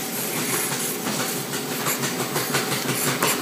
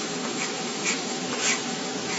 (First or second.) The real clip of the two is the first